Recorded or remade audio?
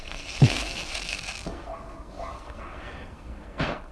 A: remade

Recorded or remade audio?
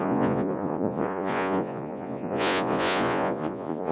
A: remade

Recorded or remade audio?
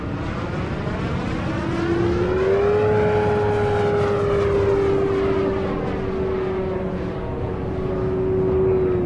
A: recorded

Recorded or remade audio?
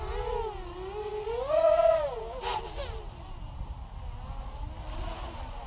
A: recorded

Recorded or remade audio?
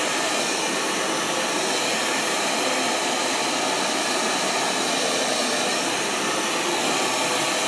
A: recorded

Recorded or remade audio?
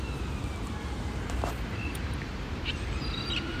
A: remade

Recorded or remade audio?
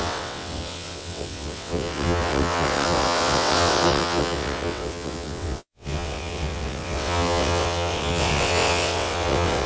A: remade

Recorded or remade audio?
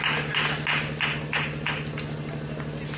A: recorded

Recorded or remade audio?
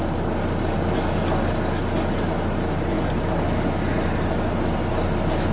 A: recorded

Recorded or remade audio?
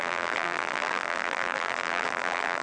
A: remade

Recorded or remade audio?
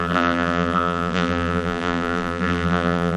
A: remade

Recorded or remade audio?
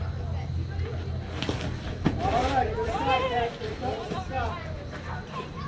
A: recorded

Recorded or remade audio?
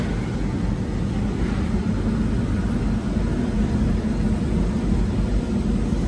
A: recorded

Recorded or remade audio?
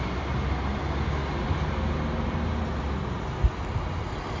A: recorded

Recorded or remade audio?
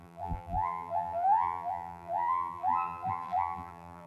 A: remade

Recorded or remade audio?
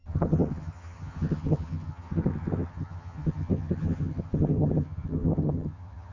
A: remade